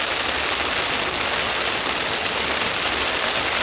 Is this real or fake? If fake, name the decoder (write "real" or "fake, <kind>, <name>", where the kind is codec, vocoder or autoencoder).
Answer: real